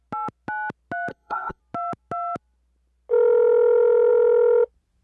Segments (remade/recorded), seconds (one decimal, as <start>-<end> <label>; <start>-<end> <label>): 0.0-1.1 recorded; 1.1-1.6 remade; 1.6-5.0 recorded